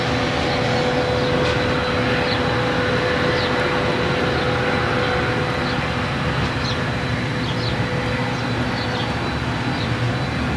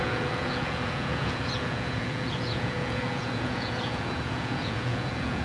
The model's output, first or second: second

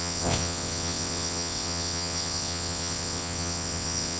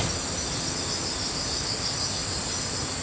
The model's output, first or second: first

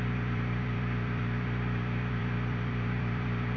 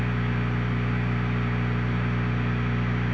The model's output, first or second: first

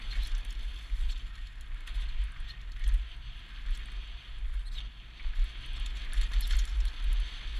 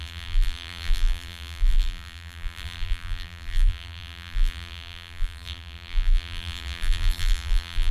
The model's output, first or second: second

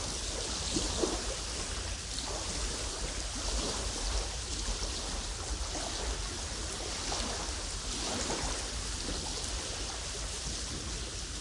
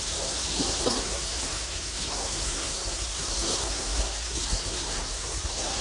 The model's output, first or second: second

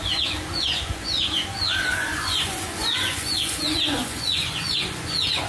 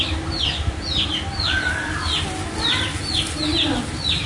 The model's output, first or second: first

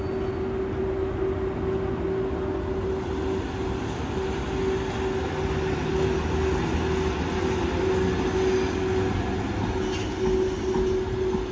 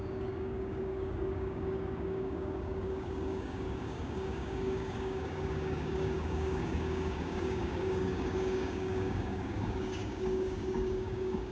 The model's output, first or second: second